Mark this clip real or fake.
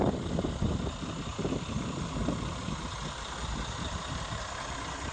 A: real